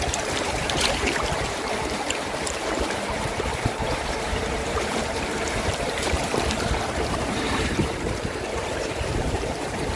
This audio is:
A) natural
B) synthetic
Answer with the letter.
B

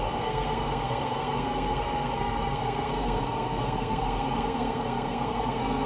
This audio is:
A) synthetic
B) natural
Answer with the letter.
A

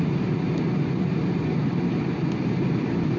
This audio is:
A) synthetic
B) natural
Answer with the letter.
B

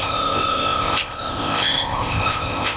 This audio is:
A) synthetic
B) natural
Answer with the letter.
A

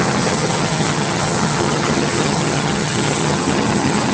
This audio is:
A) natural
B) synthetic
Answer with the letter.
B